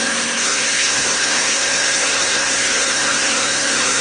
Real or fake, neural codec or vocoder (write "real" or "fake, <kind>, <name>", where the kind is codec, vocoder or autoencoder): fake, codec, SNAC